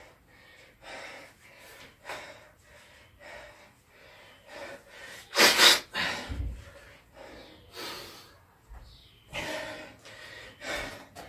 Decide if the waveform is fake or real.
real